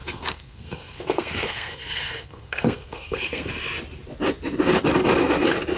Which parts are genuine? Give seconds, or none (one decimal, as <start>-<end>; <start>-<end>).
3.5-5.8